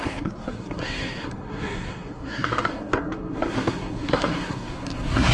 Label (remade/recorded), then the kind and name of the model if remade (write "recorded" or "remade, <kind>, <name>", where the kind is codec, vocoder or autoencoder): remade, codec, SNAC